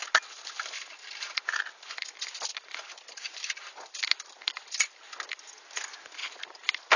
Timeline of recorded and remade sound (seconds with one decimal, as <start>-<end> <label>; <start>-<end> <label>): 0.0-1.0 recorded; 1.0-1.9 remade; 1.9-7.0 recorded